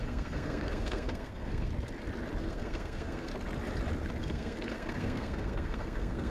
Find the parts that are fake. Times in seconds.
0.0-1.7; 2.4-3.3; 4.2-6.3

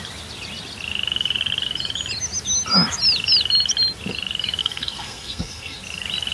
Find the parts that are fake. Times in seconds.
4.6-5.8

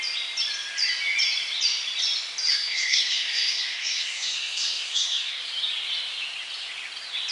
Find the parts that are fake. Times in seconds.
2.5-5.4

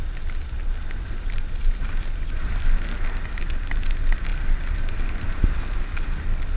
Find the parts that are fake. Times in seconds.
none